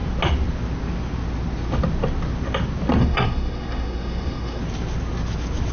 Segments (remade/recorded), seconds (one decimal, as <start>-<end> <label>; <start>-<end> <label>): 0.0-3.0 recorded; 3.0-4.6 remade; 4.6-5.7 recorded